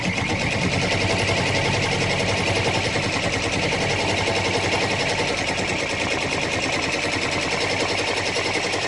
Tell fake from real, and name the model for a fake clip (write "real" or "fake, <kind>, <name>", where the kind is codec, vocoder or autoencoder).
real